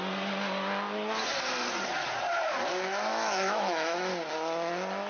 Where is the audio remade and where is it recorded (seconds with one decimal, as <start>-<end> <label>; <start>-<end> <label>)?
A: 0.0-3.1 recorded; 3.1-4.1 remade; 4.1-5.1 recorded